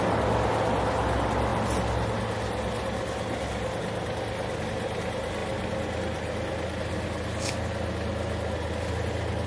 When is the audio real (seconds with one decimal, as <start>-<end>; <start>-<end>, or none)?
0.0-9.5